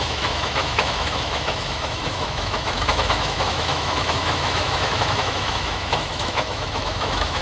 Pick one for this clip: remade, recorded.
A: remade